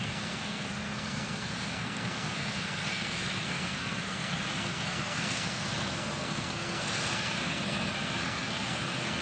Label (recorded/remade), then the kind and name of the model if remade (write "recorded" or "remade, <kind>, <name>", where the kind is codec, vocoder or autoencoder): remade, codec, SNAC